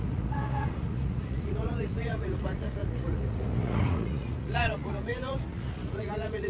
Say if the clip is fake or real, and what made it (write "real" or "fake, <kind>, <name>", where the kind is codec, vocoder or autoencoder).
fake, vocoder, Vocos